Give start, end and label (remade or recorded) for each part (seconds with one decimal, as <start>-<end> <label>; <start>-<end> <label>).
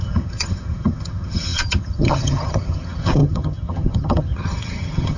0.0-5.2 remade